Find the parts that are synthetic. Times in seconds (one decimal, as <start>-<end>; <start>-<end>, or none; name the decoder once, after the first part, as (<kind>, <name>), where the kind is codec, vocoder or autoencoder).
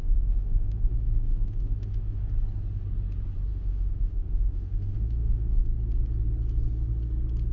0.0-2.2 (autoencoder, DAC-VAE); 3.5-5.6